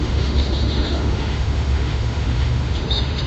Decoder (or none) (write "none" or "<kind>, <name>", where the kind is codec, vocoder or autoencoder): autoencoder, DAC-VAE